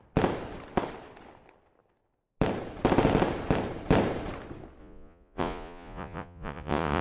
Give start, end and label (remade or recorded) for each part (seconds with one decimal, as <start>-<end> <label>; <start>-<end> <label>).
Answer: 0.0-4.8 recorded; 4.8-7.0 remade